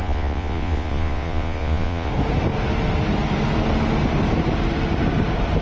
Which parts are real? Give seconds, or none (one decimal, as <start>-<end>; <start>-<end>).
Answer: 2.1-5.6